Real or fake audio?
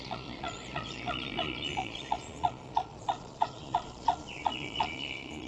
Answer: fake